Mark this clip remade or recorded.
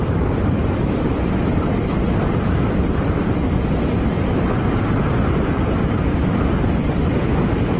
remade